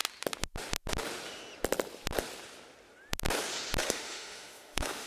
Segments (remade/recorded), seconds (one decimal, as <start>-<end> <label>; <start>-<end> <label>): 0.0-3.8 recorded; 3.8-5.1 remade

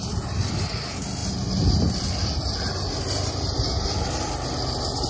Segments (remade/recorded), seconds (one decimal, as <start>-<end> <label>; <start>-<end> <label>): 0.0-5.1 recorded

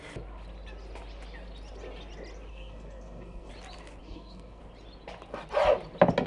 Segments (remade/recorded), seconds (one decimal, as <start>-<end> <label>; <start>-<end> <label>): 0.0-2.5 recorded; 2.5-3.5 remade; 3.5-4.0 recorded; 4.0-4.6 remade; 4.6-6.3 recorded

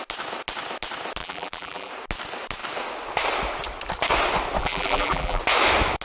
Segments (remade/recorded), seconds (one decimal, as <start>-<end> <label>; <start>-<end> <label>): 0.0-1.2 recorded; 1.2-1.9 remade; 1.9-4.6 recorded; 4.6-5.4 remade; 5.4-6.0 recorded

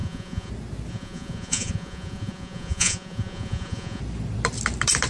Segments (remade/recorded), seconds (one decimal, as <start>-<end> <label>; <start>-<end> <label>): 0.0-0.5 remade; 0.5-0.9 recorded; 0.9-4.0 remade; 4.0-5.1 recorded

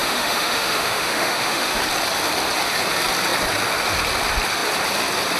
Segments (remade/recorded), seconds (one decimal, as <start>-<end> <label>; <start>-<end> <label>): 0.0-1.8 remade; 1.8-5.4 recorded